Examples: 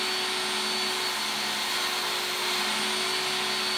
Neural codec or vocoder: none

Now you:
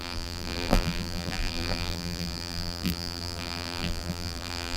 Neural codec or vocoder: vocoder, BigVGAN v2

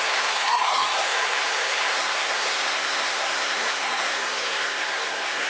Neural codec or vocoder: codec, SNAC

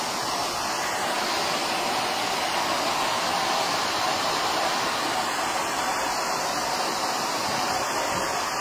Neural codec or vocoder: none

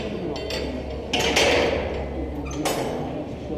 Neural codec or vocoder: none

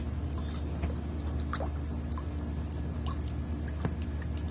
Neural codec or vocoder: none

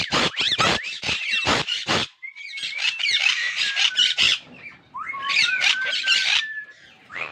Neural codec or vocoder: vocoder, BigVGAN v2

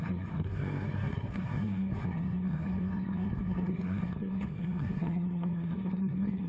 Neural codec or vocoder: codec, SNAC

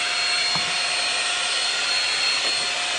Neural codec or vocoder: none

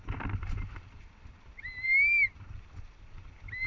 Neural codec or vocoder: none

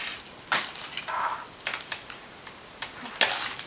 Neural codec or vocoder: none